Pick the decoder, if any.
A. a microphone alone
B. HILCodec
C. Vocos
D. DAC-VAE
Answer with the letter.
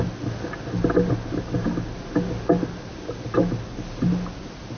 A